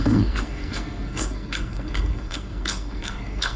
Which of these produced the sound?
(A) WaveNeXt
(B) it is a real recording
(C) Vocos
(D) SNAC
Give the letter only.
D